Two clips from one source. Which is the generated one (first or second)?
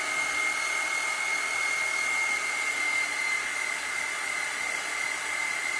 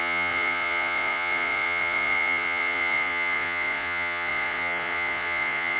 second